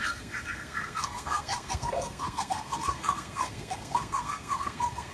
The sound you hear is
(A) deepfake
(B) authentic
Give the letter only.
A